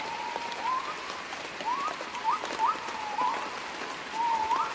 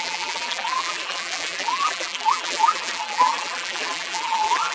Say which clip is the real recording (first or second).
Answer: first